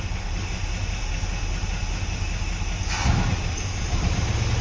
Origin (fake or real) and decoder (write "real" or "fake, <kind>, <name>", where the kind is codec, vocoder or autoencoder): real